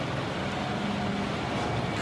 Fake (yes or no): no